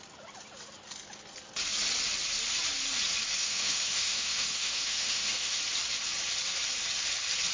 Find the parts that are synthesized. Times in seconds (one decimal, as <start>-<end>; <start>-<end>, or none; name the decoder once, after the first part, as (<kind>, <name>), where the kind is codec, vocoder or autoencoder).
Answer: 3.4-5.6 (autoencoder, DAC-VAE)